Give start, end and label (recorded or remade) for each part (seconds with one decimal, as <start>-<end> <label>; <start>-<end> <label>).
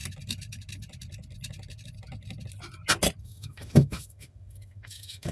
0.0-3.2 recorded; 3.2-5.3 remade